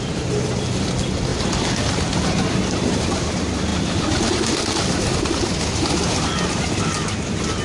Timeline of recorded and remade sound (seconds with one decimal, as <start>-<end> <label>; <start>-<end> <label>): 0.0-7.6 recorded